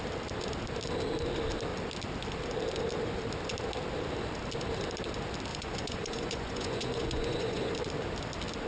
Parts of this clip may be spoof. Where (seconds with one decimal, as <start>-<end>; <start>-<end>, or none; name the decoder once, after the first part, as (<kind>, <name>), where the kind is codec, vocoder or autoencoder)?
5.5-7.7 (vocoder, Vocos)